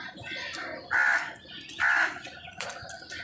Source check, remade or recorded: remade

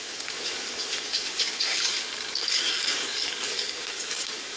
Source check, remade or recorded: remade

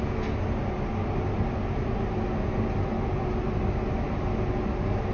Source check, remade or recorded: recorded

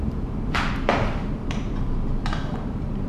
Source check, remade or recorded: remade